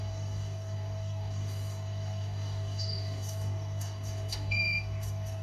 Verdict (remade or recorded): remade